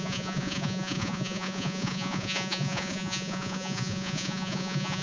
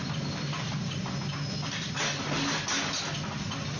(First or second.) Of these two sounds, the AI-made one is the first